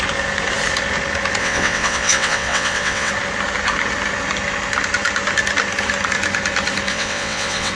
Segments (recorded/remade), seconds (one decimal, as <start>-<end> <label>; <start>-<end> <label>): 0.0-1.4 recorded; 1.4-3.1 remade; 3.1-6.9 recorded; 6.9-7.7 remade